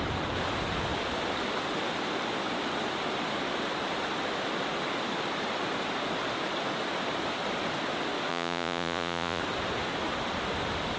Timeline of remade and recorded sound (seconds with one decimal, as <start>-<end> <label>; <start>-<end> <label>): 0.0-8.3 recorded; 8.3-9.4 remade; 9.4-11.0 recorded